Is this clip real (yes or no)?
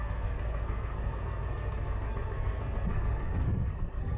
no